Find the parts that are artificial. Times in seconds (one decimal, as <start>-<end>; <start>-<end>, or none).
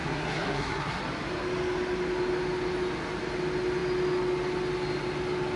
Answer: 0.0-1.0